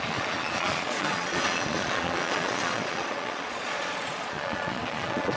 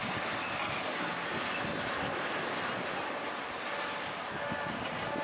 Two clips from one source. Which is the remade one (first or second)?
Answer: first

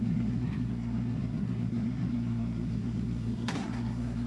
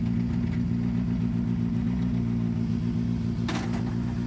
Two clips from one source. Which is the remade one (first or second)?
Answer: first